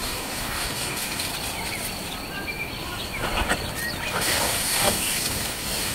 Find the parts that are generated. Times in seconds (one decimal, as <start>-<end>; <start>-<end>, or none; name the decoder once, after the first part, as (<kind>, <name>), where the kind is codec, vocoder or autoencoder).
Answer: 0.0-1.3 (codec, DAC); 4.1-5.9